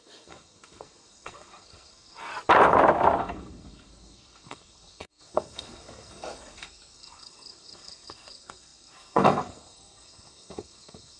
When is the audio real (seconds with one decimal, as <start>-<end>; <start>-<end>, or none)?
2.3-3.2